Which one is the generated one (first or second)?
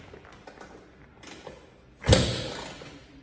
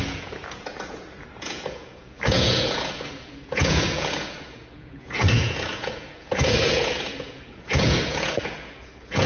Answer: second